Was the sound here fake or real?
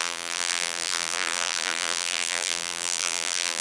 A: fake